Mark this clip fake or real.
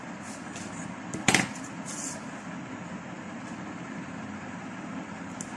real